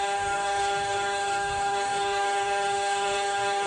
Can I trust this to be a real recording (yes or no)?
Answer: no